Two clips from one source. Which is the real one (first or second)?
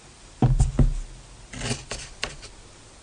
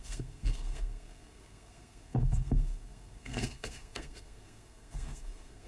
first